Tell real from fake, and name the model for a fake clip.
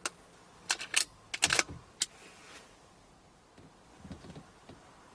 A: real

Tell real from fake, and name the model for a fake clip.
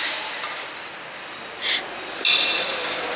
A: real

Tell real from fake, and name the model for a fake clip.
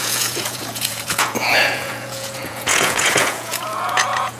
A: fake, vocoder, Vocos